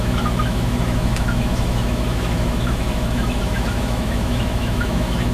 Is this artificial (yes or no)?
yes